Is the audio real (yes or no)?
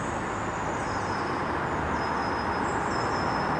yes